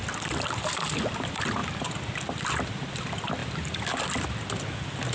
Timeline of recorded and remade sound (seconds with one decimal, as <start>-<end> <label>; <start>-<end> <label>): 0.0-0.6 remade; 0.6-1.6 recorded; 1.6-3.0 remade; 3.0-3.4 recorded; 3.4-4.2 remade; 4.2-5.1 recorded